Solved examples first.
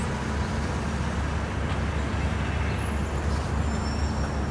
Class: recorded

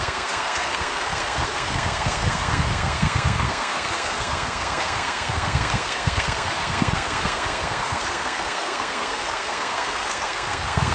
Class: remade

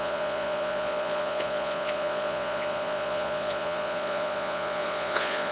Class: remade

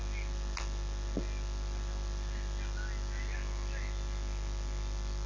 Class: recorded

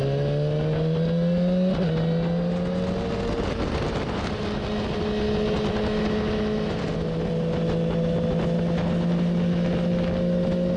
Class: recorded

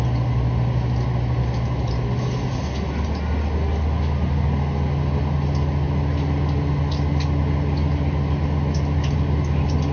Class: recorded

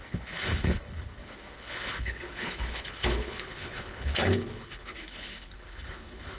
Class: remade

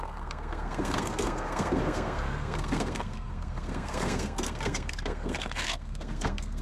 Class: remade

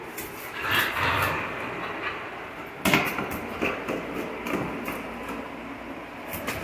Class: recorded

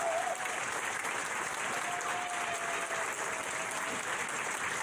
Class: recorded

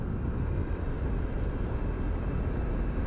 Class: recorded